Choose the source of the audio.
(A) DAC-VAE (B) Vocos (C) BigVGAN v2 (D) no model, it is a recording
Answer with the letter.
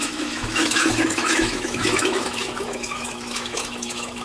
A